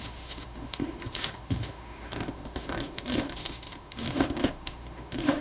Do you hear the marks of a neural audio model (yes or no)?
yes